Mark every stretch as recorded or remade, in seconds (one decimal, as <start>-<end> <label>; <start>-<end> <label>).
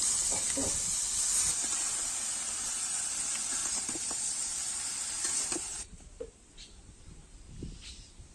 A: 0.0-3.6 recorded; 3.6-4.2 remade; 4.2-5.7 recorded; 5.7-6.5 remade; 6.5-8.3 recorded